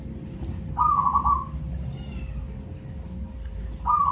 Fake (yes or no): no